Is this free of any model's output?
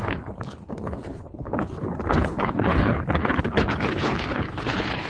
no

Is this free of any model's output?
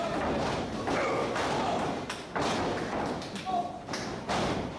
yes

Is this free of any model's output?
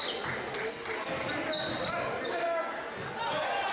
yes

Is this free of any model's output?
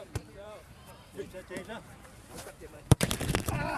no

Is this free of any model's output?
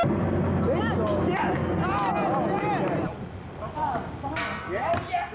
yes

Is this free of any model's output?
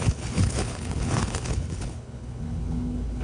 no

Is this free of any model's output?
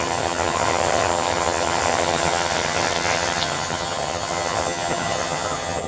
no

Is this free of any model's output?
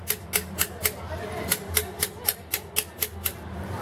yes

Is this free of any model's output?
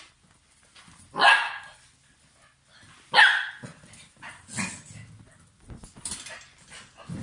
yes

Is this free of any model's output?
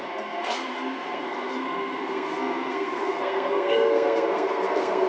no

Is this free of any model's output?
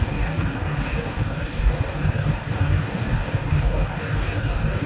no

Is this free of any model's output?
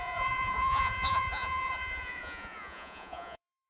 no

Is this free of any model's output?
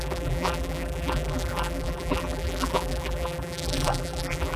no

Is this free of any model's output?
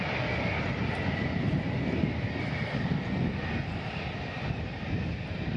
yes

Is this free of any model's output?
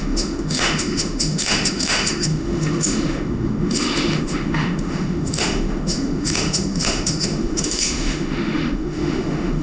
no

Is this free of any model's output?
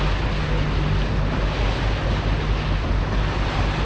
yes